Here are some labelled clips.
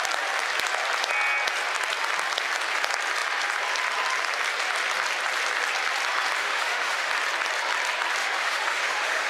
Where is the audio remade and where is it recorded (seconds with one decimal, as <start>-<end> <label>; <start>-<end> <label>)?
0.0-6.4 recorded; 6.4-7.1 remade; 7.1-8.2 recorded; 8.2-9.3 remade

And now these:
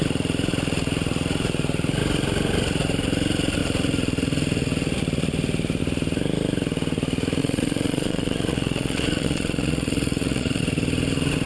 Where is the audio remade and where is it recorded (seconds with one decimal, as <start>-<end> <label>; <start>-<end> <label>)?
0.0-7.4 recorded; 7.4-10.6 remade; 10.6-11.5 recorded

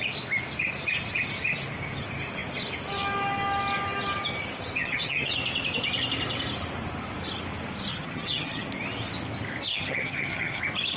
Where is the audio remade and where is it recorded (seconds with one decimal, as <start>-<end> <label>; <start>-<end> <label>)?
0.0-4.8 recorded; 4.8-5.3 remade; 5.3-7.9 recorded; 7.9-8.7 remade; 8.7-9.7 recorded; 9.7-10.6 remade; 10.6-11.0 recorded

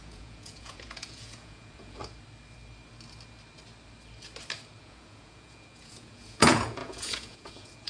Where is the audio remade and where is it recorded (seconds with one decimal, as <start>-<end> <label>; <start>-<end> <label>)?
0.0-2.0 remade; 2.0-4.8 recorded; 4.8-7.9 remade

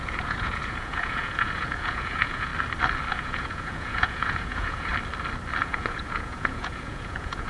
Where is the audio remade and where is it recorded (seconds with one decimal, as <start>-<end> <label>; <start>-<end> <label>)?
0.0-2.5 remade; 2.5-3.1 recorded; 3.1-4.9 remade; 4.9-5.6 recorded; 5.6-7.5 remade